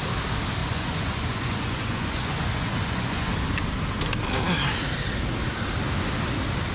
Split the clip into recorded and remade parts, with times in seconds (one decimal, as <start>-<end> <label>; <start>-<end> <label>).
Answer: 0.0-0.6 recorded; 0.6-3.3 remade; 3.3-6.7 recorded